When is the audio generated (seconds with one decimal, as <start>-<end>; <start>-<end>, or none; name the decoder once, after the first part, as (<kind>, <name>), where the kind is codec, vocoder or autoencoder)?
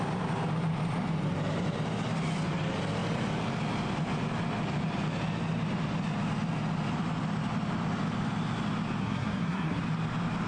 9.0-9.8 (codec, SNAC)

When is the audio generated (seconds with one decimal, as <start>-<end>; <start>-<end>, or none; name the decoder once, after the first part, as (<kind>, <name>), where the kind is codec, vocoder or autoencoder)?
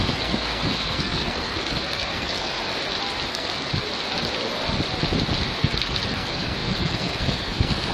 0.0-2.7 (codec, SNAC); 3.3-3.7; 5.6-7.9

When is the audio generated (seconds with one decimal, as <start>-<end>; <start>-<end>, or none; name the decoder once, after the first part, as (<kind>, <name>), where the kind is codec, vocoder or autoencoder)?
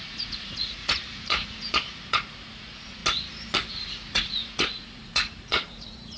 0.0-3.0 (vocoder, Vocos); 3.7-6.2